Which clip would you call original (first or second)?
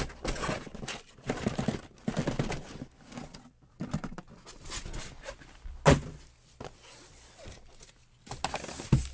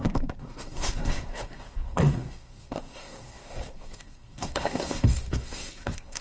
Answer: first